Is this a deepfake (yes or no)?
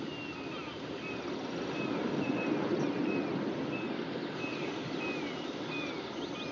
no